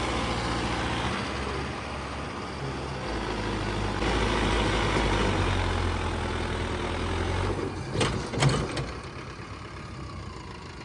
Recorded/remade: recorded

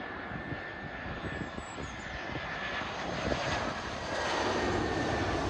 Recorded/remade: recorded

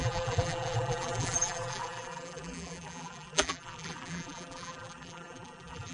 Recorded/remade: remade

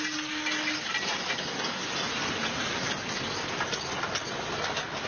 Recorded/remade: recorded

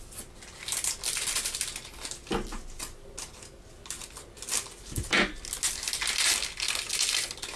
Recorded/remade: recorded